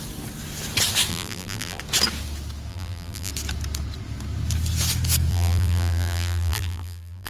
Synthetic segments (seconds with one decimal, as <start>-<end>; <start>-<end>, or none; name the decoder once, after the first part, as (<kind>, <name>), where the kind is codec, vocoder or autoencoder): 1.1-1.8 (vocoder, BigVGAN v2); 2.7-3.3; 5.3-7.3